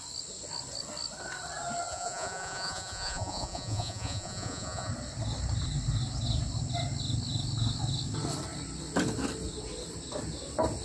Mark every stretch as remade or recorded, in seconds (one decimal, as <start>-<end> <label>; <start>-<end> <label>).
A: 0.0-1.9 recorded; 1.9-4.9 remade; 4.9-10.8 recorded